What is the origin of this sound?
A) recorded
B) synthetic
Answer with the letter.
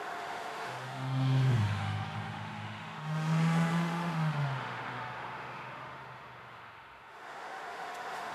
B